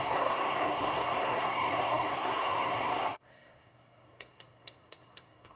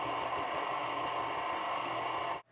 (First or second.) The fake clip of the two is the first